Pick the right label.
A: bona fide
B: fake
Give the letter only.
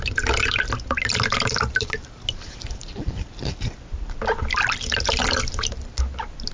A